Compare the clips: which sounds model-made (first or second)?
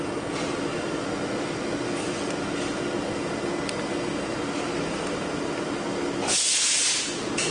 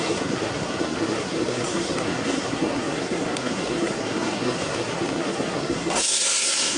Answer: second